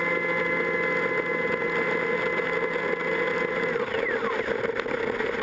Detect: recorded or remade recorded